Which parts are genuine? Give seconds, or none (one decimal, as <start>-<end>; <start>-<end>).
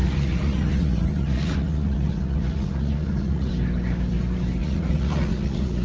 3.5-4.6